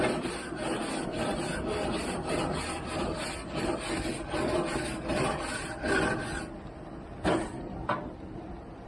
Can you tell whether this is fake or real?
real